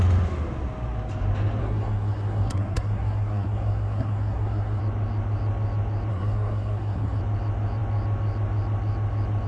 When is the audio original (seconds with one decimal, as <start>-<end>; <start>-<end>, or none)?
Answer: 0.0-1.6; 4.8-6.1; 7.2-9.5